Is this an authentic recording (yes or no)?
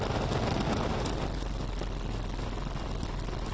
yes